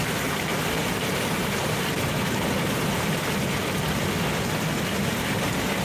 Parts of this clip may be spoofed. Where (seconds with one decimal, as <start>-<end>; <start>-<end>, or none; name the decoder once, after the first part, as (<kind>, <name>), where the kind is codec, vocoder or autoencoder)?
0.5-2.9 (vocoder, BigVGAN v2)